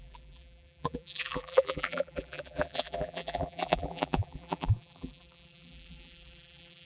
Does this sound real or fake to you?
fake